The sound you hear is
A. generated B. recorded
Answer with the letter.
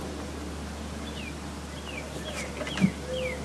B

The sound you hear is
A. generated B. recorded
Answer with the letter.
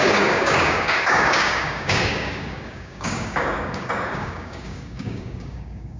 A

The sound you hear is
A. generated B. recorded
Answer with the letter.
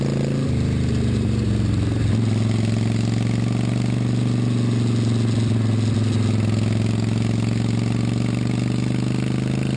B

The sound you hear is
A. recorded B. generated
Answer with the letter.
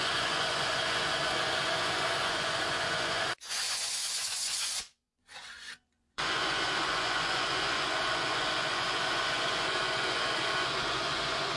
B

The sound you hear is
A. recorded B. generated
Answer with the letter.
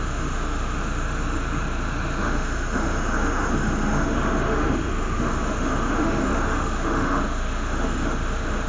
B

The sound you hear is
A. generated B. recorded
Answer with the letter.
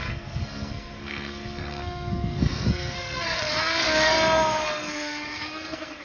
A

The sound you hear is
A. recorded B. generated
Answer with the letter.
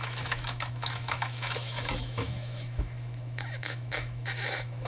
B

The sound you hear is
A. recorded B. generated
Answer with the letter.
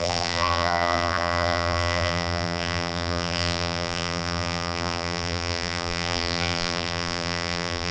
B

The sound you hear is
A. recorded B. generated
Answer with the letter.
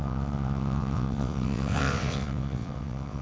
B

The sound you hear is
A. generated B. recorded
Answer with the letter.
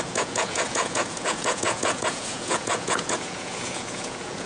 A